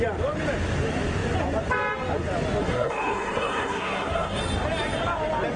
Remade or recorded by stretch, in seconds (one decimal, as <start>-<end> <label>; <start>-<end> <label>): 0.0-2.6 recorded; 2.6-4.4 remade; 4.4-5.6 recorded